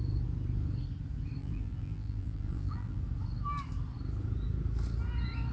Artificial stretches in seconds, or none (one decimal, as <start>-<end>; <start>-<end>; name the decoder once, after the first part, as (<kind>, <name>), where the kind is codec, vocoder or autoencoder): 1.4-3.0 (vocoder, BigVGAN v2)